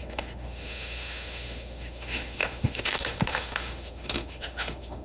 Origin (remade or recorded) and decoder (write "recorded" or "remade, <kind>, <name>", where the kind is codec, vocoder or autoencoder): remade, autoencoder, DAC-VAE